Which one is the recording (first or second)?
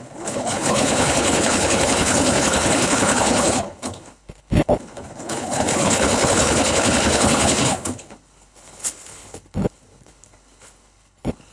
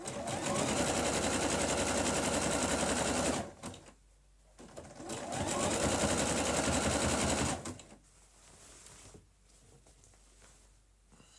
second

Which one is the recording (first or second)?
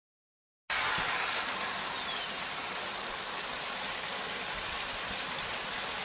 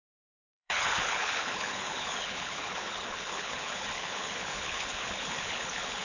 first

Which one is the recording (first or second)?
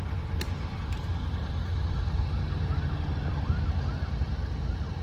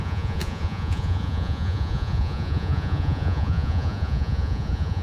first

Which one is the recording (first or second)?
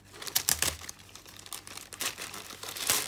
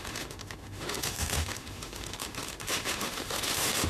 first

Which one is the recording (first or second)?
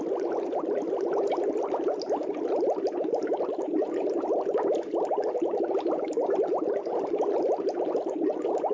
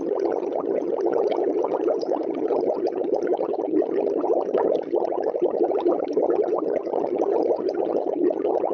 first